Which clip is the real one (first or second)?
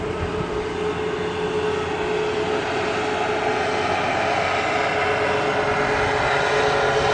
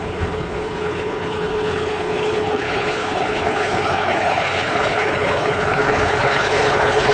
first